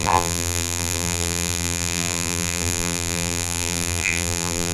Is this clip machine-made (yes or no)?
yes